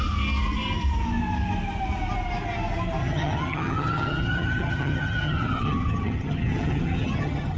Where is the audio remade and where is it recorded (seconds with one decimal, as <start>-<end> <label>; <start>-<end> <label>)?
0.0-3.0 recorded; 3.0-7.6 remade